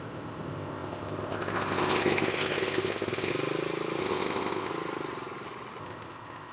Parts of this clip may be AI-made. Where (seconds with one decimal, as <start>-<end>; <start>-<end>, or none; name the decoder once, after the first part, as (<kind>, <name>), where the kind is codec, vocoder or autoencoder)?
0.0-3.3 (codec, ZipCodec); 4.0-4.7; 5.8-6.5